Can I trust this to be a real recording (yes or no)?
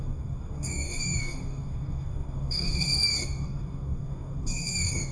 no